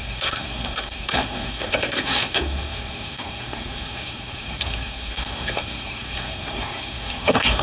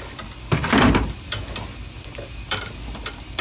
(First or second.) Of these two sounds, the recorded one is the second